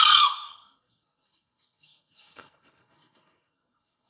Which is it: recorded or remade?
remade